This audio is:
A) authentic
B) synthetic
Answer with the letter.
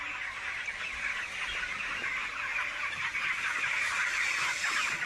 A